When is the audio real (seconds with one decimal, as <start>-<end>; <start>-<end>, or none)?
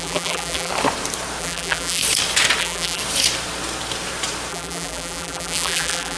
0.7-1.4; 2.0-2.6; 3.0-4.5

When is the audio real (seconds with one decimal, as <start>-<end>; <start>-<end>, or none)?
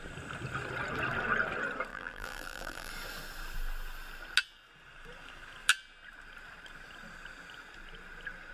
0.0-1.9; 2.9-8.5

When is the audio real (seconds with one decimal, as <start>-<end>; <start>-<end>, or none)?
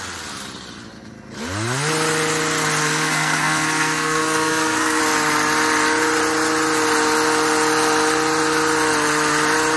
0.0-2.8; 5.0-9.8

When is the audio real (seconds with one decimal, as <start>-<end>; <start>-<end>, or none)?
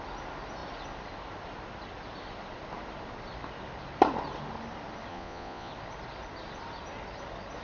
0.0-5.1; 5.7-7.6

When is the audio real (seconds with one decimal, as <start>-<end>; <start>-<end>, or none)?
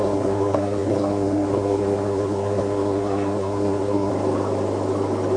4.1-5.4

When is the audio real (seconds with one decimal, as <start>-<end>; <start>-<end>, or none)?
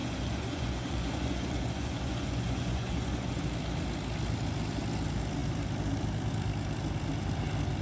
3.4-7.8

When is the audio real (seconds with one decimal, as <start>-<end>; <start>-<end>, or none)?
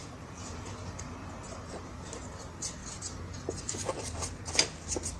0.0-5.2